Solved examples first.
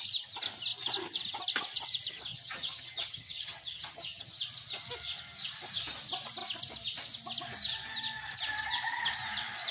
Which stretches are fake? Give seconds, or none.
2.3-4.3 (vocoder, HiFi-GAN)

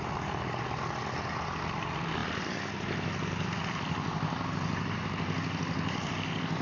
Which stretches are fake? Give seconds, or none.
none